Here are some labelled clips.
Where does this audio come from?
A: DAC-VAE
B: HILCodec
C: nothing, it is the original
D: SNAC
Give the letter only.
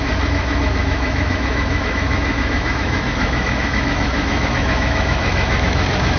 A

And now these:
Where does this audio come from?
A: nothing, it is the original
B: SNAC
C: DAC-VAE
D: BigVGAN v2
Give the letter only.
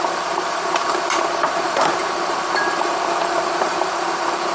D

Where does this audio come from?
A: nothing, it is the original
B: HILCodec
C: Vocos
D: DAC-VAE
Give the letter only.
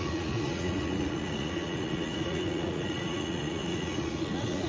C